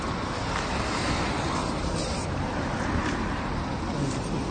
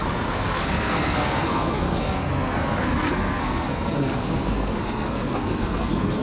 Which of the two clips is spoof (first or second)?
second